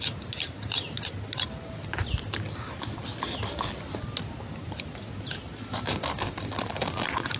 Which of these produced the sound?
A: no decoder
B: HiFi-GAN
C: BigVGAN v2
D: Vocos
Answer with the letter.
A